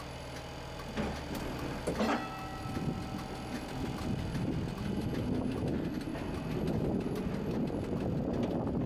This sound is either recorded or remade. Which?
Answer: recorded